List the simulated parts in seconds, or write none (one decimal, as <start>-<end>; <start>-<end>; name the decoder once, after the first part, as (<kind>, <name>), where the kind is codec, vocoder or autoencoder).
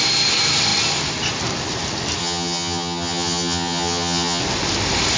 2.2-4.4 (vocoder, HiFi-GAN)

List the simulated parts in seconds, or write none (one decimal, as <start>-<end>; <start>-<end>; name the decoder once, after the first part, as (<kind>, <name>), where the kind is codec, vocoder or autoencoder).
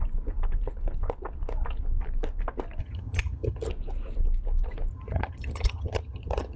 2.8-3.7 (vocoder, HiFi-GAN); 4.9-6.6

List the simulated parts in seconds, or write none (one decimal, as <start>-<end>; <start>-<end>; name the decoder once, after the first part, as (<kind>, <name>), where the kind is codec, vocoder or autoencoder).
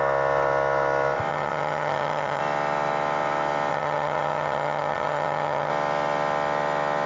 1.3-2.4 (vocoder, HiFi-GAN); 3.7-5.7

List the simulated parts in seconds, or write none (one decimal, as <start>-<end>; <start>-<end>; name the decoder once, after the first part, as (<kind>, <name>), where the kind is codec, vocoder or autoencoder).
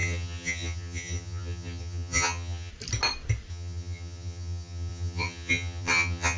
0.0-2.7 (vocoder, HiFi-GAN); 3.5-6.4